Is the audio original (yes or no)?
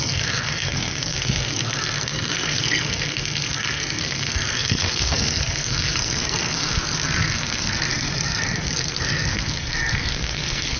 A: no